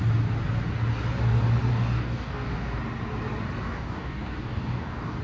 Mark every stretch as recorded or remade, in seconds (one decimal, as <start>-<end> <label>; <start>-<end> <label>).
0.0-1.7 recorded; 1.7-2.8 remade; 2.8-3.6 recorded; 3.6-5.2 remade